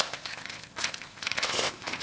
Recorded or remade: remade